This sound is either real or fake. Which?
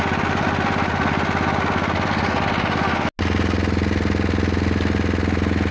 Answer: real